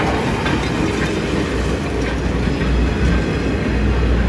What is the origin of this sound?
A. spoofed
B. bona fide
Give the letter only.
B